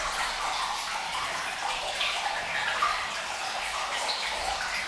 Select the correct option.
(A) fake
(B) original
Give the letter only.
B